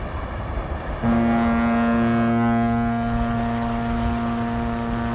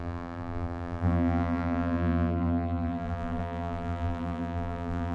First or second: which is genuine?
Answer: first